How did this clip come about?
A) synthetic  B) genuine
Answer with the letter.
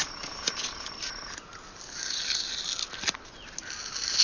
B